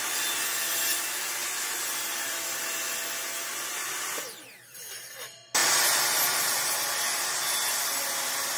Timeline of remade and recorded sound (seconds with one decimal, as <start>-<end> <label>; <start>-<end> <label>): 0.0-8.6 recorded